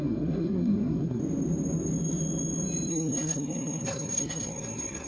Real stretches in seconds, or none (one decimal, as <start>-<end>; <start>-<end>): 1.2-2.9